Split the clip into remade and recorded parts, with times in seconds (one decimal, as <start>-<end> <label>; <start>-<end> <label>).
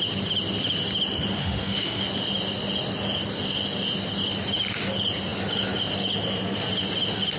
0.0-1.4 recorded; 1.4-2.0 remade; 2.0-7.4 recorded